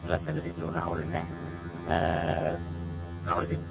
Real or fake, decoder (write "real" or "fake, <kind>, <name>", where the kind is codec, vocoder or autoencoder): fake, vocoder, HiFi-GAN